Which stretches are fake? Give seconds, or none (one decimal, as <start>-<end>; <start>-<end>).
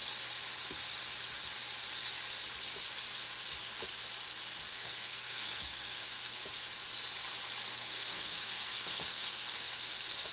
4.7-6.4; 7.7-10.3